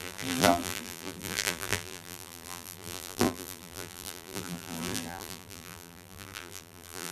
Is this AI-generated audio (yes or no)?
yes